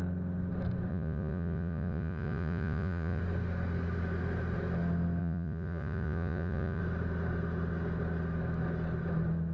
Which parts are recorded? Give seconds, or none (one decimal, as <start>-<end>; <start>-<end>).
0.0-0.9; 3.2-5.2; 6.8-9.5